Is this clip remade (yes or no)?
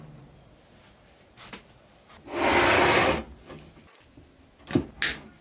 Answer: no